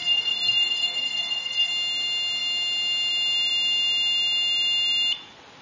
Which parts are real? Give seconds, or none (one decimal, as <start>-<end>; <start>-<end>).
1.7-5.6